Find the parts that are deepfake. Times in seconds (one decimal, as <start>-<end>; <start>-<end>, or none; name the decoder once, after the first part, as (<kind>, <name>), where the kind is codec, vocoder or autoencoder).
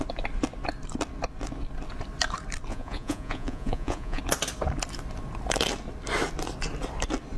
2.7-4.2 (vocoder, Vocos)